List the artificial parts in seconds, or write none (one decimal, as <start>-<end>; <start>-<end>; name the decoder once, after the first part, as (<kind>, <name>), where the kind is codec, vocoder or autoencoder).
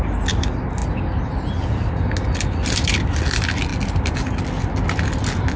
none